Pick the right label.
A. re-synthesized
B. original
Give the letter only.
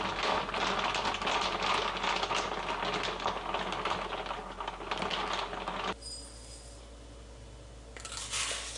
B